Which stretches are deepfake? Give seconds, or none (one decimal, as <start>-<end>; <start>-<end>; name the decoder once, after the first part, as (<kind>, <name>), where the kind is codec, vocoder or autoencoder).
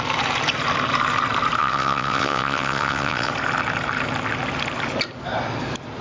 1.6-3.3 (vocoder, WaveNeXt)